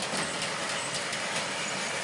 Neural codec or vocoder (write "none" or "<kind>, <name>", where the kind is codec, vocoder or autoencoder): none